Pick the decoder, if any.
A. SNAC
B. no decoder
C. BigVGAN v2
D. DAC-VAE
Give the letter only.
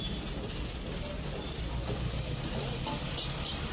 B